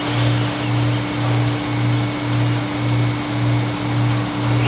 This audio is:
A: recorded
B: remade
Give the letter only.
A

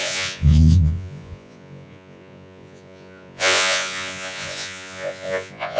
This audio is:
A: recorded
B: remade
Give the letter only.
B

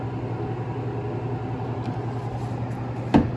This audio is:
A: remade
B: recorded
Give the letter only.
B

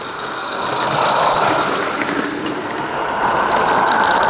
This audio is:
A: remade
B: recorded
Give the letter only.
B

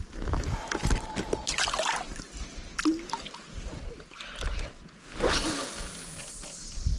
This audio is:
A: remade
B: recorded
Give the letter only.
B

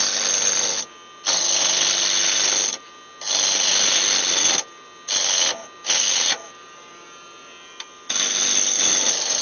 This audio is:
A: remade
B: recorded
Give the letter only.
B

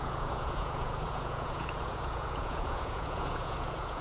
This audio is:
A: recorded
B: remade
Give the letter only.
B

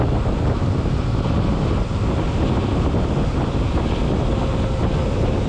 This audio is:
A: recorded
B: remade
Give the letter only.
A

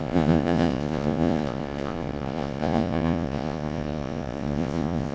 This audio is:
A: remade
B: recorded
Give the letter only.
A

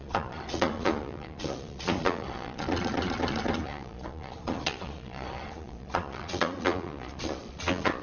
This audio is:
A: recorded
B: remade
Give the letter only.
B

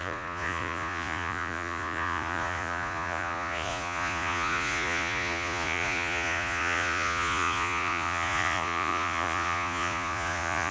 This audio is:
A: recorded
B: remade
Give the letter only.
B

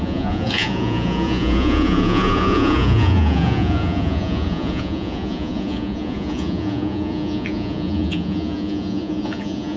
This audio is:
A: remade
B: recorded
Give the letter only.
A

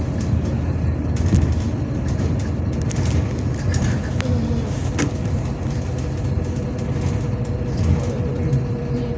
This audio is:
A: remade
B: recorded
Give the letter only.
B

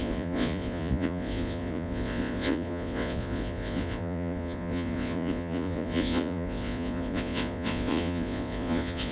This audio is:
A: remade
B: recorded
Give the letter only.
A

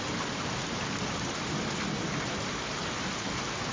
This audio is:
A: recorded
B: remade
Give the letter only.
A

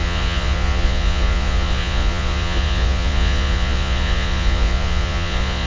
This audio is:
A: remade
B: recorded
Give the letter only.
A